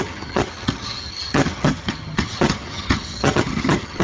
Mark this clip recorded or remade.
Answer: remade